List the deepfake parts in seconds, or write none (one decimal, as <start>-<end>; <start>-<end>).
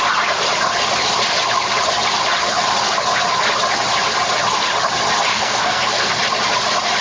5.3-6.1